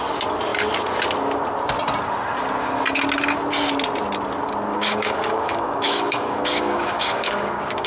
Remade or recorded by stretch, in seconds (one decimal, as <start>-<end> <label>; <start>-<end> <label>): 0.0-4.7 recorded; 4.7-7.9 remade